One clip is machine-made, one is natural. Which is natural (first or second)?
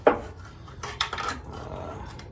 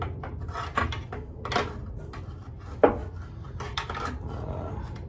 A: second